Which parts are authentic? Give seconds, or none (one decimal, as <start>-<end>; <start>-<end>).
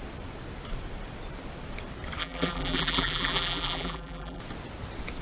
0.0-2.2; 4.4-5.2